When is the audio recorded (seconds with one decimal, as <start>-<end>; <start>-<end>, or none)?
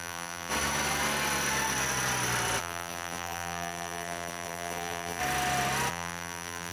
0.5-2.6; 5.2-5.9